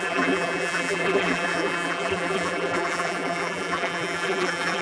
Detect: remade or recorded remade